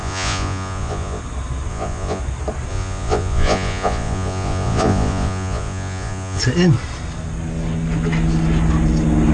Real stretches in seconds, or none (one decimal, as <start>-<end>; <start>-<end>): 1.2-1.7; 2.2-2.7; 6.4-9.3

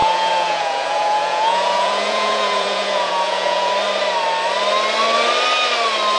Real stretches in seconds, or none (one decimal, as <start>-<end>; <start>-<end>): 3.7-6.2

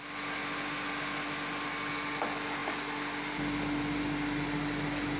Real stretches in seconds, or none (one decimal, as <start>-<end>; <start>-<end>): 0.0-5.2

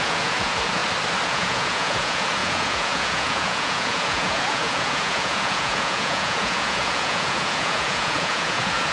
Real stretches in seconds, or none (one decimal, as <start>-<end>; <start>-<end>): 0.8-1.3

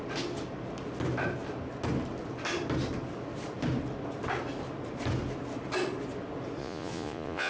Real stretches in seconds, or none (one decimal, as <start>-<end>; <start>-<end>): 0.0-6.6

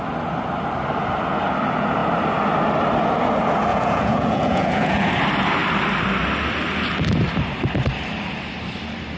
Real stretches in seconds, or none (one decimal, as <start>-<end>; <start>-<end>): 0.0-3.7; 5.1-9.2